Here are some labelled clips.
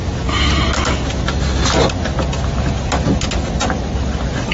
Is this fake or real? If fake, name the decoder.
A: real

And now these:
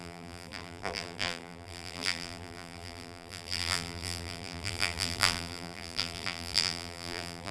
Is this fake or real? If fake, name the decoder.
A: fake, vocoder, BigVGAN v2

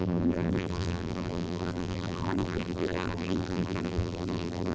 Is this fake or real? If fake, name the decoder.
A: fake, vocoder, BigVGAN v2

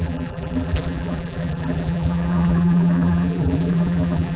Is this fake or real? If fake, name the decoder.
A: fake, vocoder, BigVGAN v2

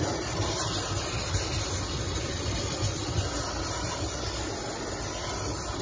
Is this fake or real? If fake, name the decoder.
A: fake, vocoder, BigVGAN v2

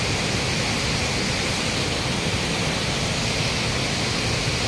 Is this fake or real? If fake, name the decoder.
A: real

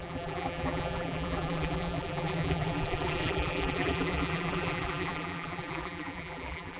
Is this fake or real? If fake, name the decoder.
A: fake, vocoder, BigVGAN v2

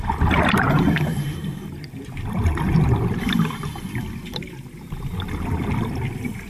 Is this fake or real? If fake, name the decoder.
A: fake, vocoder, BigVGAN v2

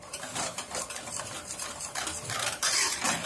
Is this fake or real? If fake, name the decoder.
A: fake, vocoder, BigVGAN v2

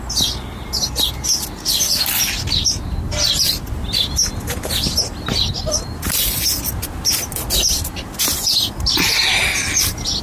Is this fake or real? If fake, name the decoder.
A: real